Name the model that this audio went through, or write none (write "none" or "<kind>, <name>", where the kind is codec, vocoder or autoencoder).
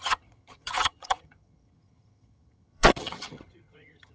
vocoder, HiFi-GAN